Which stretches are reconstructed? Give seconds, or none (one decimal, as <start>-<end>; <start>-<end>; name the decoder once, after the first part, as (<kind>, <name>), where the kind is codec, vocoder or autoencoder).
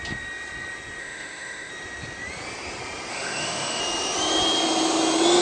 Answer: 1.0-1.7 (autoencoder, DAC-VAE); 3.1-3.8